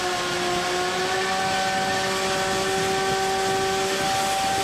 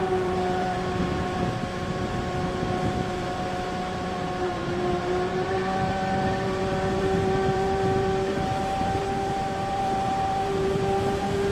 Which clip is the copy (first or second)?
second